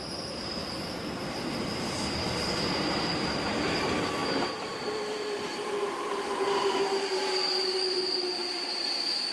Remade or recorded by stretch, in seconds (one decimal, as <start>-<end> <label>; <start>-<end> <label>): 0.0-0.6 remade; 0.6-1.2 recorded; 1.2-9.3 remade

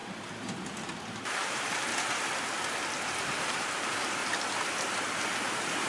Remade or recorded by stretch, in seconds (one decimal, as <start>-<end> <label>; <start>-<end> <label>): 0.0-1.0 recorded; 1.0-1.9 remade; 1.9-3.2 recorded; 3.2-4.2 remade; 4.2-5.1 recorded; 5.1-5.9 remade

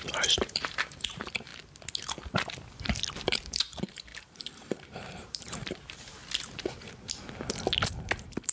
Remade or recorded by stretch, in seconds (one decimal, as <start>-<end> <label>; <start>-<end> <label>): 0.0-1.5 remade; 1.5-3.2 recorded; 3.2-6.2 remade; 6.2-7.9 recorded; 7.9-8.5 remade

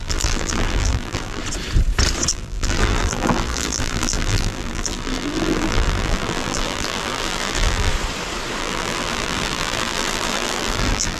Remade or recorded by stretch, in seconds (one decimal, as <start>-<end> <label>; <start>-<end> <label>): 0.0-1.4 remade; 1.4-2.3 recorded; 2.3-7.9 remade; 7.9-8.6 recorded; 8.6-11.2 remade

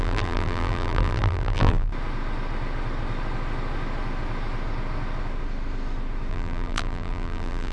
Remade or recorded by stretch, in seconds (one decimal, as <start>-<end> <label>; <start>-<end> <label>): 0.0-1.9 remade; 1.9-6.3 recorded; 6.3-7.7 remade

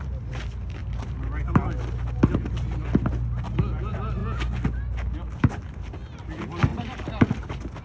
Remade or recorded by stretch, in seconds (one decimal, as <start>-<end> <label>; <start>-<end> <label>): 0.0-0.8 recorded; 0.8-1.6 remade; 1.6-6.7 recorded; 6.7-7.3 remade; 7.3-7.8 recorded

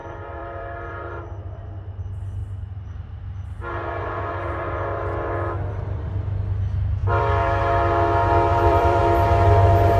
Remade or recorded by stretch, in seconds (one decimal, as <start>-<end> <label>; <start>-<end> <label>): 0.0-1.1 remade; 1.1-7.0 recorded; 7.0-7.6 remade; 7.6-8.5 recorded; 8.5-9.0 remade; 9.0-10.0 recorded